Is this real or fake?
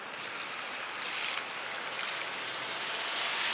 real